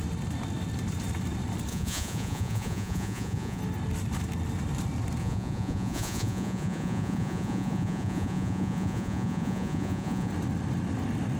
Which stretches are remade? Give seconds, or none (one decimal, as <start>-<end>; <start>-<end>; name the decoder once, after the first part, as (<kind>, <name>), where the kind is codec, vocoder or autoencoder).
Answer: 1.7-3.6 (vocoder, Vocos); 5.2-10.3